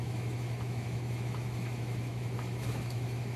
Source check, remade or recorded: remade